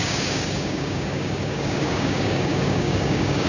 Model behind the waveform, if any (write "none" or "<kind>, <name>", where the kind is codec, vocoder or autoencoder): codec, DAC